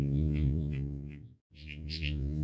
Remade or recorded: remade